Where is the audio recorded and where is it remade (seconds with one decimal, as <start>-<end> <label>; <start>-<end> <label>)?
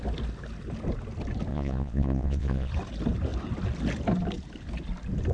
0.0-1.5 recorded; 1.5-2.7 remade; 2.7-5.3 recorded